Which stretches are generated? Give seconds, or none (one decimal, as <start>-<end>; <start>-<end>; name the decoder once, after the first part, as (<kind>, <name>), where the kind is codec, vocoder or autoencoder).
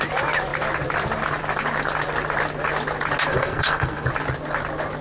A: 3.3-4.1 (codec, SNAC)